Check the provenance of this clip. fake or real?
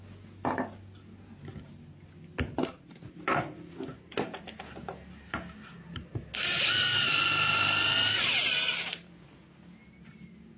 real